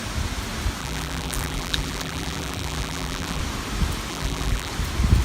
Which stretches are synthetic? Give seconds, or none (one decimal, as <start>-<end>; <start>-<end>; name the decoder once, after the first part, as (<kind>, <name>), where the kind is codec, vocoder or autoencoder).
0.8-3.4 (vocoder, BigVGAN v2); 4.1-4.7